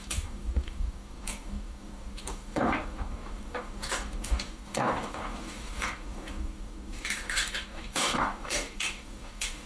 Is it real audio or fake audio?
fake